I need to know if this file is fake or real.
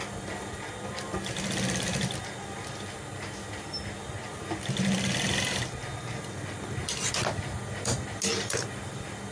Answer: real